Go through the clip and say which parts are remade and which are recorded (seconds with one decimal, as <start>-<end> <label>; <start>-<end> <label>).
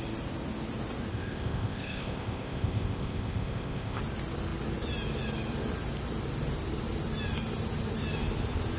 0.0-1.1 recorded; 1.1-4.0 remade; 4.0-8.8 recorded